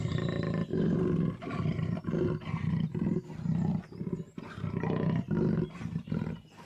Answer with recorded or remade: recorded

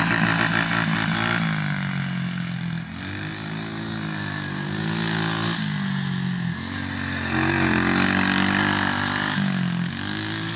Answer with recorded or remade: recorded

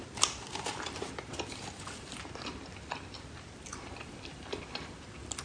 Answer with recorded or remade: remade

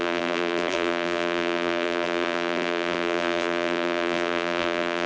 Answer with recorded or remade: remade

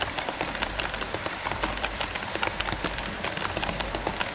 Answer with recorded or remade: remade